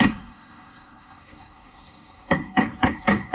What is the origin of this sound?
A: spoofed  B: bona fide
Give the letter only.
A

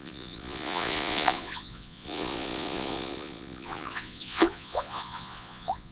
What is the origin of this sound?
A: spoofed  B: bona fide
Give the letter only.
A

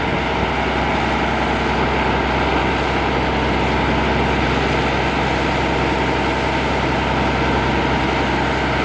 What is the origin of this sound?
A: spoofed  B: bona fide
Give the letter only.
B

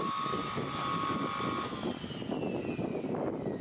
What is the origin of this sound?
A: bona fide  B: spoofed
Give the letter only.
A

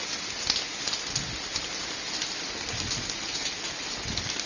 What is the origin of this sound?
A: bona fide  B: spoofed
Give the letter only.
A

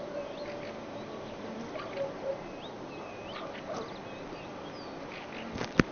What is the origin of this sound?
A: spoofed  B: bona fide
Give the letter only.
B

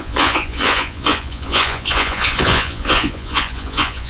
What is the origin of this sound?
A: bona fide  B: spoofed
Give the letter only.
B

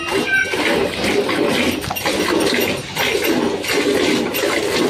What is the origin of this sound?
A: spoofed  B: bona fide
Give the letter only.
B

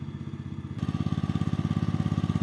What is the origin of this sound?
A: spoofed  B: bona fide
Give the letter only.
B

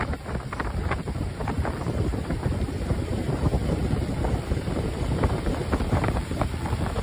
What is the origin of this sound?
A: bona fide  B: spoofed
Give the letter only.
B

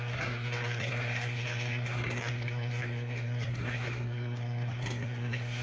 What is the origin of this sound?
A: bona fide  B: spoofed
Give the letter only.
B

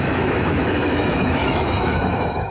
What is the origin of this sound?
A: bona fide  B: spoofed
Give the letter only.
B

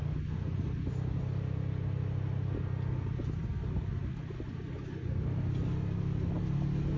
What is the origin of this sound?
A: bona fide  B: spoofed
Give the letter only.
A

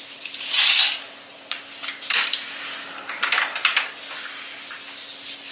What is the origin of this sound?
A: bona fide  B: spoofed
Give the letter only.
A